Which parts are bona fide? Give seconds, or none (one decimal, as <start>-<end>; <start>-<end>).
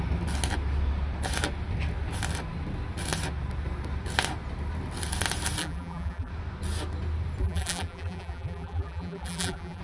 0.0-5.6; 6.3-7.4